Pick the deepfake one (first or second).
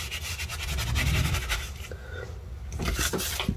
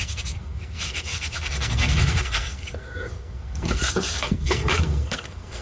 second